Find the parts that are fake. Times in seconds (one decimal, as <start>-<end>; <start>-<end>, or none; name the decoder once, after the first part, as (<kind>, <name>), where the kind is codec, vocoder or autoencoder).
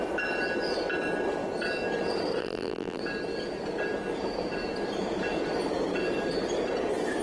2.4-3.0 (vocoder, BigVGAN v2)